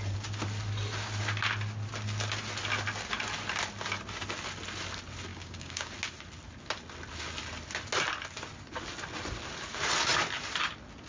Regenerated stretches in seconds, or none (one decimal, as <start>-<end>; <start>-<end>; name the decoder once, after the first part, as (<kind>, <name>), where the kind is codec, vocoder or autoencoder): 5.3-5.9 (codec, DAC)